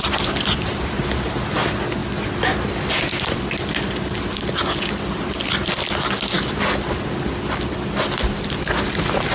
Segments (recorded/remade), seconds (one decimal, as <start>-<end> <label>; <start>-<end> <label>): 0.0-9.3 recorded